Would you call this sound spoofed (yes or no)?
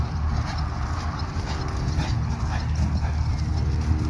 no